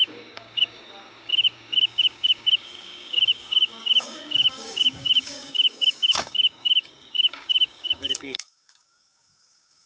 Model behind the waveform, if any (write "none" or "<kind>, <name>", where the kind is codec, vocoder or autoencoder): codec, DAC